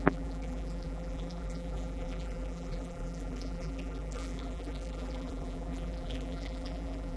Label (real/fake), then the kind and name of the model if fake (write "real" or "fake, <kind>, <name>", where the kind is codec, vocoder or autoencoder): fake, vocoder, BigVGAN v2